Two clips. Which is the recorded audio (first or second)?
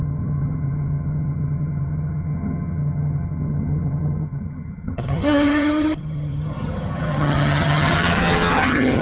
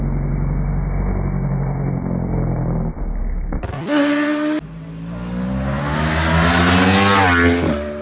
second